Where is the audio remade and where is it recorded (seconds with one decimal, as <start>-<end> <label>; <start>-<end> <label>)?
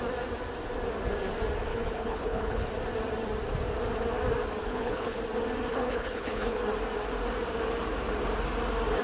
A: 0.0-1.7 recorded; 1.7-2.7 remade; 2.7-4.6 recorded; 4.6-5.2 remade; 5.2-5.7 recorded; 5.7-6.6 remade; 6.6-9.0 recorded